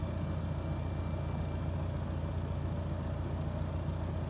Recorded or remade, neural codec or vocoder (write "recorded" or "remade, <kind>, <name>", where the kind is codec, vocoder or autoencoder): recorded